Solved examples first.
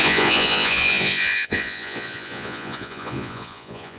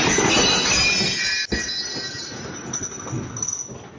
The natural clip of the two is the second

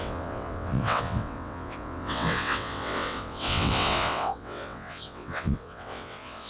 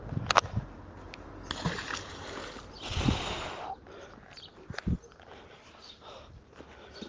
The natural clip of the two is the second